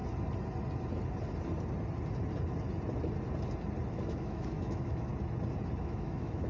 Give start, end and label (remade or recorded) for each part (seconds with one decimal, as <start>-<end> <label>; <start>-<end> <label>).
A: 0.0-3.9 recorded; 3.9-5.1 remade; 5.1-5.8 recorded; 5.8-6.5 remade